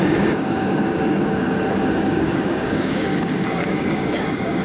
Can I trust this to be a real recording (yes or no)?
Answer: no